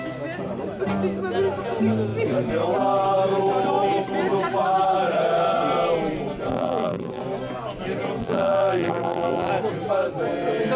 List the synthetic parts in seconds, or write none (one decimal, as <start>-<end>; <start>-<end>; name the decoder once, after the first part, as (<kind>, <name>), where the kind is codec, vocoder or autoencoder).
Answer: 6.5-7.2 (vocoder, BigVGAN v2); 8.2-9.5